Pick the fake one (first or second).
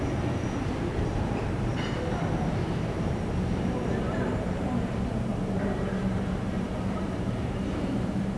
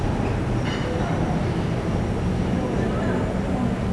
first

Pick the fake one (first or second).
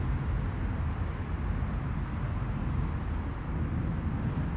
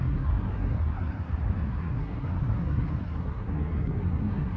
second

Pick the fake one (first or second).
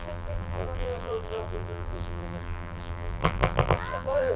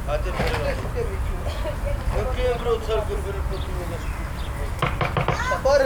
first